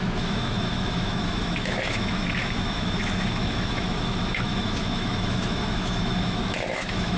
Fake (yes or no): yes